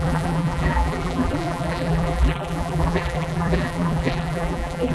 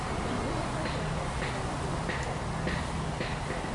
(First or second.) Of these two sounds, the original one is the second